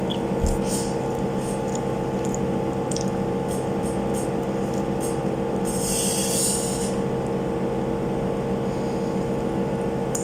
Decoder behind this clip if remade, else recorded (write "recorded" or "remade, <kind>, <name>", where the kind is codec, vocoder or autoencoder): recorded